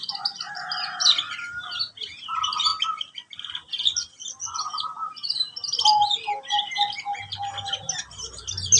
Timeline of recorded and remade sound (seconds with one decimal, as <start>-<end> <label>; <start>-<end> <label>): 0.0-8.8 recorded